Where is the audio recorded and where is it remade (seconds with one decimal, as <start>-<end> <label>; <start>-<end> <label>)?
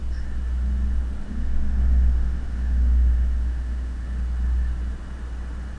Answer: 0.0-1.3 recorded; 1.3-4.0 remade; 4.0-5.8 recorded